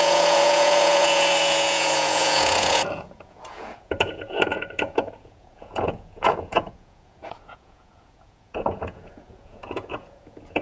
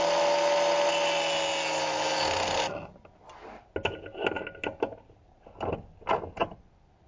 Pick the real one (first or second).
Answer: second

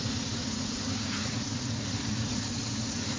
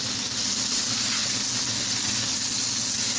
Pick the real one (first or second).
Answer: second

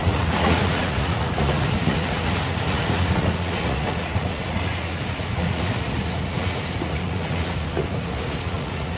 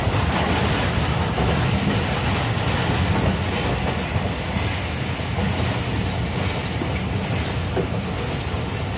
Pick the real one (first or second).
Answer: second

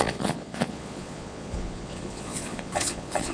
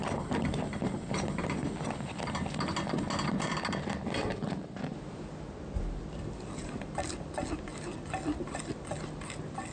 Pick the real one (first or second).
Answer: second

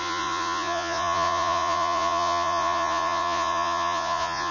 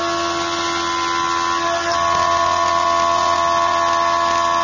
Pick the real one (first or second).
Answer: second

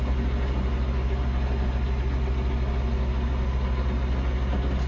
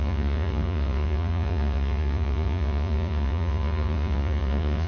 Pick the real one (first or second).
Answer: first